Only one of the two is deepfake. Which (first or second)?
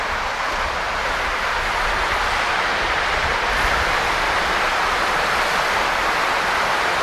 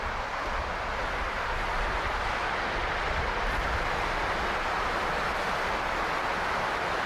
first